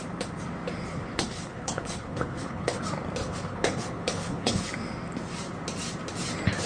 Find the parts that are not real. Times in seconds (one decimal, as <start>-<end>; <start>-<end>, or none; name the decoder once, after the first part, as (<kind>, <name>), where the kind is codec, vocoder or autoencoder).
0.9-2.8 (codec, HILCodec); 3.2-4.6